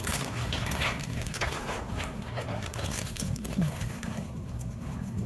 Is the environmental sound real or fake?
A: fake